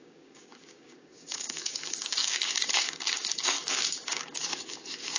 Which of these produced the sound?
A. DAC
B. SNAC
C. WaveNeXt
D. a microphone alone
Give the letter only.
A